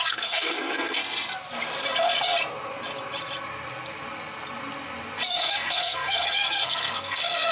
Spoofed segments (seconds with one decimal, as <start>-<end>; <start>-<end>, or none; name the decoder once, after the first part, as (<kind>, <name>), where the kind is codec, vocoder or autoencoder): 0.0-1.0 (codec, SNAC); 5.4-7.5